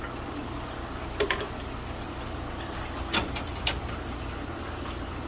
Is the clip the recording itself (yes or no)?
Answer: yes